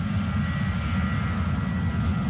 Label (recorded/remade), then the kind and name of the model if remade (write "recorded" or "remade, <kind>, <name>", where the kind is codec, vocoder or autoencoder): recorded